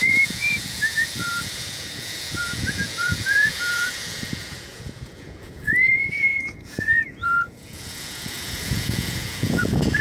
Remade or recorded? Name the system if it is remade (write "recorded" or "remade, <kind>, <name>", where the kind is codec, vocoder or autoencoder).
remade, vocoder, Vocos